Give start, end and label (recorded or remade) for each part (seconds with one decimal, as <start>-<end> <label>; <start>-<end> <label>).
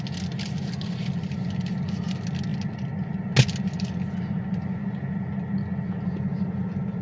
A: 0.0-7.0 recorded